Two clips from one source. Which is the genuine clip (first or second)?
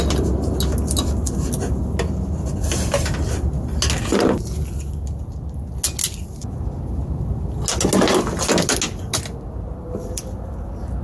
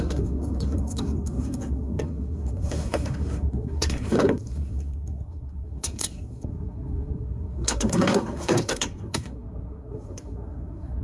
first